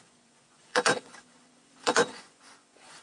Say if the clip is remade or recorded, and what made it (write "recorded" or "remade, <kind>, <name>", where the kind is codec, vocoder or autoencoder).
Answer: remade, vocoder, Vocos